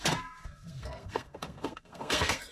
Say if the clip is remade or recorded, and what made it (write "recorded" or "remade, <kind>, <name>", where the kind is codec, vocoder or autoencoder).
remade, codec, SNAC